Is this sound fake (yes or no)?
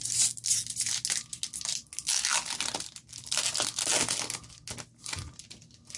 no